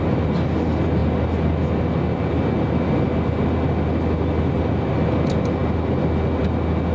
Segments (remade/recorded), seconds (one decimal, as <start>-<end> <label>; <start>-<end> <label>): 0.0-6.9 recorded